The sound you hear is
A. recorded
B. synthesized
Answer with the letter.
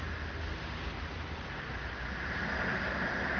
A